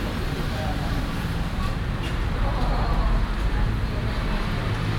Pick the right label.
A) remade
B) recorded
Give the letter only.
A